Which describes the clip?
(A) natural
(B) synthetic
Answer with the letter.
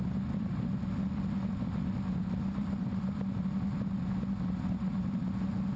A